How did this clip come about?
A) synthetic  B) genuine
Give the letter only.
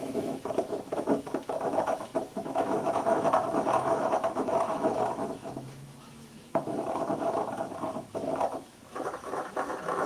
A